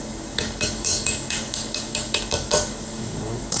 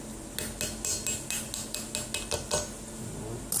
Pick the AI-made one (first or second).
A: first